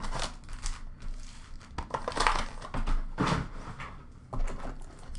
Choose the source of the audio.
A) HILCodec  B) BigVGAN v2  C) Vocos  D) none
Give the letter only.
D